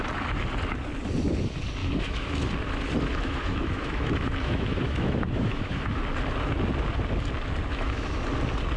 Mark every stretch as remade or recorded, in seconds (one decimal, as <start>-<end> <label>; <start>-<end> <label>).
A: 0.0-1.8 recorded; 1.8-2.5 remade; 2.5-3.1 recorded; 3.1-6.0 remade; 6.0-7.7 recorded; 7.7-8.2 remade; 8.2-8.8 recorded